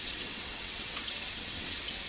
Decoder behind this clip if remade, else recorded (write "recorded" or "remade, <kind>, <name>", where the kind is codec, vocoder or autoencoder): remade, vocoder, WaveNeXt